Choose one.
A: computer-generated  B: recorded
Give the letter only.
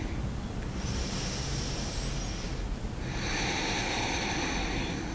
B